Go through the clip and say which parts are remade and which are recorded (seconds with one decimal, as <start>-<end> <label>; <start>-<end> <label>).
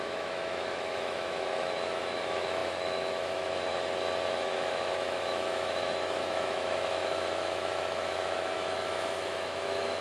0.0-3.7 remade; 3.7-4.3 recorded; 4.3-10.0 remade